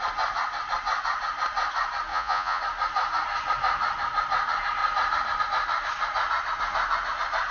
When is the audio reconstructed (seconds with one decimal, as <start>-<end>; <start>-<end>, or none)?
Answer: 2.1-2.6